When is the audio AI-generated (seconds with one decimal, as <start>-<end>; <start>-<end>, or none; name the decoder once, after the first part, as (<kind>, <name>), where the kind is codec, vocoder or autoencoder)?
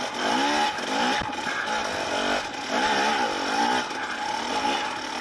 none